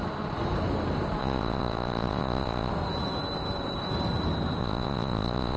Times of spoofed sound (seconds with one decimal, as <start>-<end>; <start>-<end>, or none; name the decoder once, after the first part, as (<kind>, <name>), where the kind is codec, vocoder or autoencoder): 1.2-2.7 (vocoder, Vocos); 4.6-5.6